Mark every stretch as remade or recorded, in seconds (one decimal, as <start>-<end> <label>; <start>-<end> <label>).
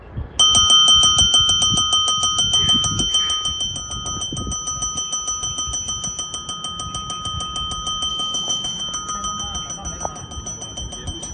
0.0-8.1 recorded; 8.1-8.8 remade; 8.8-11.3 recorded